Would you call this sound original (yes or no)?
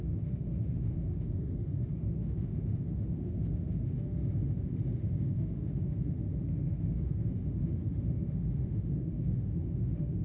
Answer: no